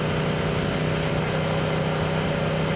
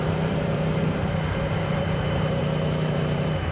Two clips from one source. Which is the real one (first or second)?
first